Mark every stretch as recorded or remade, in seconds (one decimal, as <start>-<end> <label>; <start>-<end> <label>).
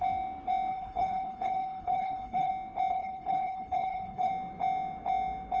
0.0-0.7 recorded; 0.7-2.5 remade; 2.5-2.9 recorded; 2.9-4.3 remade; 4.3-5.6 recorded